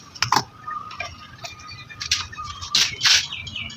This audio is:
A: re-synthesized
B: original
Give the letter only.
B